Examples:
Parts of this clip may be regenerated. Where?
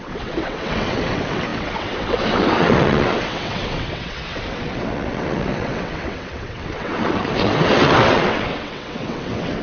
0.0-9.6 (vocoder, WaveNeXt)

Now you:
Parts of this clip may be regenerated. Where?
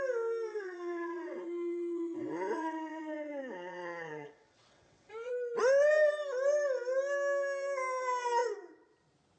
0.5-5.3 (vocoder, WaveNeXt)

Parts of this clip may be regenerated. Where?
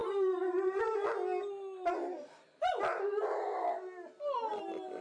0.0-0.8 (vocoder, BigVGAN v2)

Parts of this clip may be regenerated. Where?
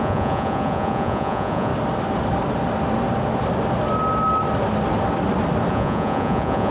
0.0-1.7 (vocoder, Vocos); 5.7-6.7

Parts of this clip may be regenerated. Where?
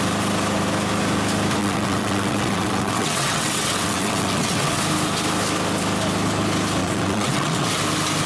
1.6-4.8 (vocoder, WaveNeXt); 6.8-7.7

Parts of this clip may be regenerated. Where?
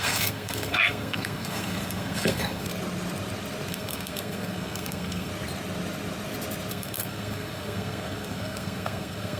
0.0-2.7 (codec, SNAC); 3.7-5.3; 6.7-9.4